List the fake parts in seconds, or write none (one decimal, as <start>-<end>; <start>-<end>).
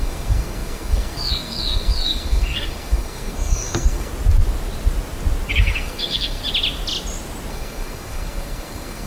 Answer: 0.0-4.1; 5.5-6.4; 7.5-9.1